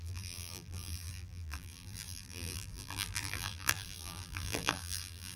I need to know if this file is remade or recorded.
remade